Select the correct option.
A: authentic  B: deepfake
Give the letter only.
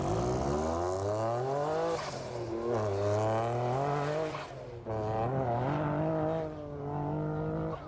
A